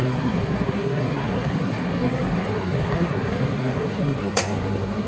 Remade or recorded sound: remade